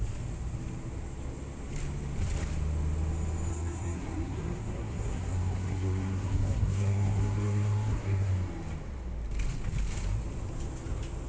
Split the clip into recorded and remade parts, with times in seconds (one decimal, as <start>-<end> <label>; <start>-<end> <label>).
0.0-3.5 recorded; 3.5-8.3 remade; 8.3-11.3 recorded